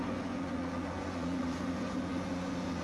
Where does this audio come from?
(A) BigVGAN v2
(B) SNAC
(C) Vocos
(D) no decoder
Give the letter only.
C